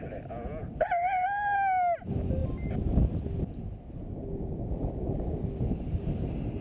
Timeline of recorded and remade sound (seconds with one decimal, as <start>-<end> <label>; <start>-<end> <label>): 0.0-6.6 recorded